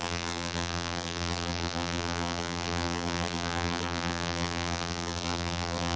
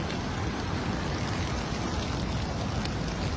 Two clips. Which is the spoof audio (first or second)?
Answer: first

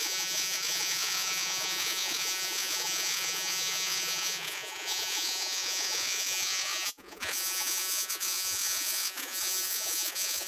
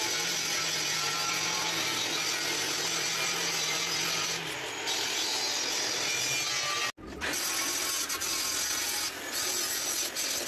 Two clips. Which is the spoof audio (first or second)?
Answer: first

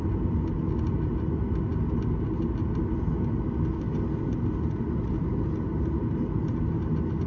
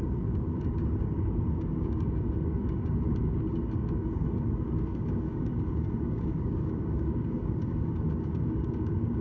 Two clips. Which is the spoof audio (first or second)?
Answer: second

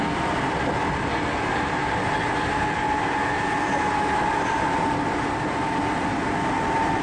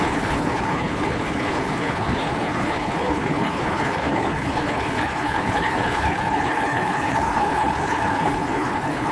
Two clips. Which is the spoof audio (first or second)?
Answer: second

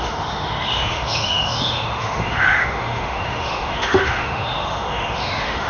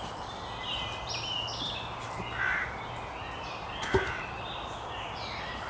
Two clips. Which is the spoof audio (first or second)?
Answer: first